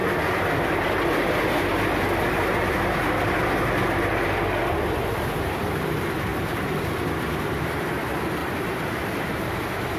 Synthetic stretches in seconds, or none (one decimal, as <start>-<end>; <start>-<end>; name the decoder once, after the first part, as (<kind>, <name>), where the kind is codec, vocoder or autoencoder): 6.3-6.8 (vocoder, BigVGAN v2); 8.4-8.9